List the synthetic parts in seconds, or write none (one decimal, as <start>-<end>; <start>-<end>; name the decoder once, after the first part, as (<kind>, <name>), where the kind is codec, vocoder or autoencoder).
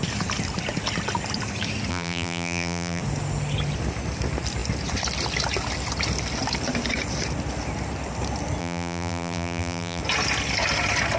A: 1.9-3.0 (vocoder, BigVGAN v2); 8.6-10.0